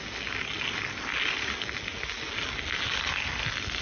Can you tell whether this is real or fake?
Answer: real